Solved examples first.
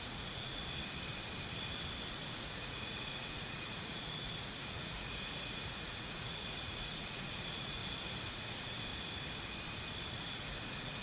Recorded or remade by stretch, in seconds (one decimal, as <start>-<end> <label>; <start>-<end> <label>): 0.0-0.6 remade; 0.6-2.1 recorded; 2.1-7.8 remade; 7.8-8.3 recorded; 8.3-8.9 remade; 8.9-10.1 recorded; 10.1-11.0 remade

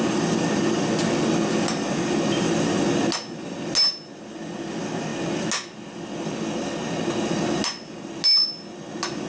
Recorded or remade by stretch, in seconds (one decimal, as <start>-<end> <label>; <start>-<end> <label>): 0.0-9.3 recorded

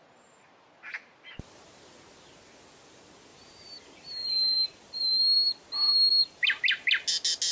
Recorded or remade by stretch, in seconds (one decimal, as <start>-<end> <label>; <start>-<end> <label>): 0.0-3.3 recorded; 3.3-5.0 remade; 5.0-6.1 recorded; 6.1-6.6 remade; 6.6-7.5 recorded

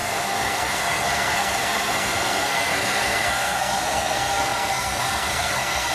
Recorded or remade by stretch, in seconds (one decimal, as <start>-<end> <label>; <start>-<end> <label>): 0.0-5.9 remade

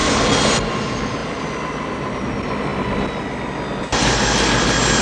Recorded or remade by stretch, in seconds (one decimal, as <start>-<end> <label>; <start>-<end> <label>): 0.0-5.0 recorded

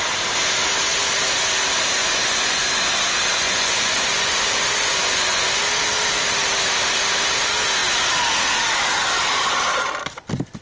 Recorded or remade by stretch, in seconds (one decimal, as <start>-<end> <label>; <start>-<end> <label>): 0.0-2.0 recorded; 2.0-2.7 remade; 2.7-3.3 recorded; 3.3-5.6 remade; 5.6-10.6 recorded

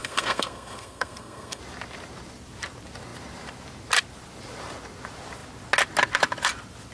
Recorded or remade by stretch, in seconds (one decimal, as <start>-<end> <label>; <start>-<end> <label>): 0.0-1.6 remade; 1.6-6.9 recorded

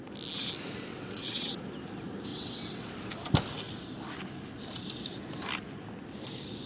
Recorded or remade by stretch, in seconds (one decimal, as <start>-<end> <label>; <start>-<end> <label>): 0.0-0.9 recorded; 0.9-1.6 remade; 1.6-2.3 recorded; 2.3-2.9 remade; 2.9-6.7 recorded